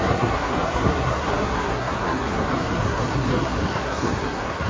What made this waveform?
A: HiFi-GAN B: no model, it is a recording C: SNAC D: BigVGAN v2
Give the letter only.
C